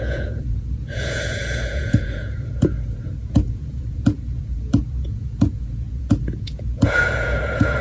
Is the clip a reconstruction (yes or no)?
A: yes